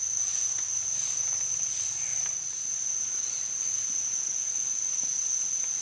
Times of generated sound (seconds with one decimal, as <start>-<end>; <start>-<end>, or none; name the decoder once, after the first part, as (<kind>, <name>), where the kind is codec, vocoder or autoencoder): none